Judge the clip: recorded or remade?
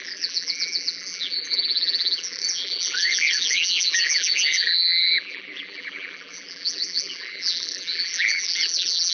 remade